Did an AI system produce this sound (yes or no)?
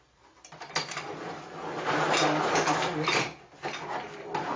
no